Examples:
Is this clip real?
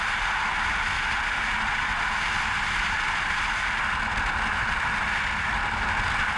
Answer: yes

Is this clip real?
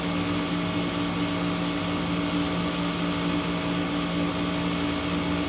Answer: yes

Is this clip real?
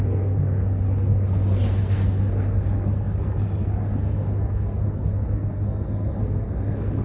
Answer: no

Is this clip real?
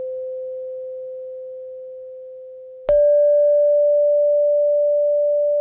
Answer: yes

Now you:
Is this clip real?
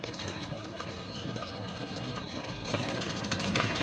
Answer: no